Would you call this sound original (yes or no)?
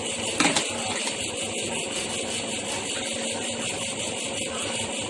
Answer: yes